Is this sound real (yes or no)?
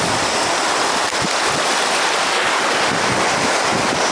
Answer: yes